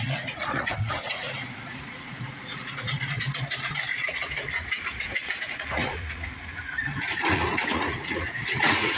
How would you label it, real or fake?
fake